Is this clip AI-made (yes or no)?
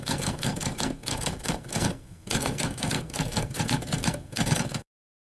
yes